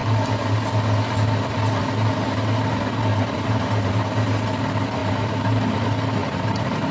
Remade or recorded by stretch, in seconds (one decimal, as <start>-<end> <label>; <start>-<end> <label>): 0.0-3.1 recorded; 3.1-4.4 remade; 4.4-5.0 recorded; 5.0-5.7 remade; 5.7-6.2 recorded; 6.2-6.9 remade